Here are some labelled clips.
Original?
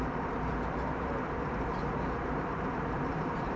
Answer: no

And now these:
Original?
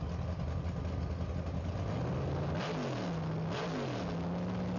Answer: yes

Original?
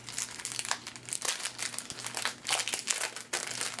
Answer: yes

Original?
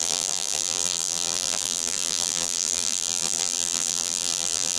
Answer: no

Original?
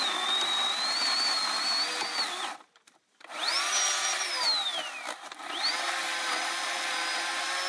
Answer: yes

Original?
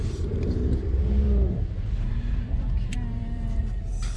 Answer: no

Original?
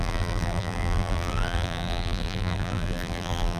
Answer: no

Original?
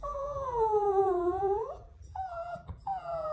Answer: no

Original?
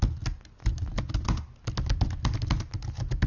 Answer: yes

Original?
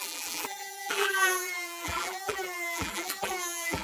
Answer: no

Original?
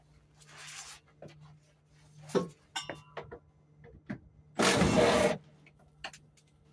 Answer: yes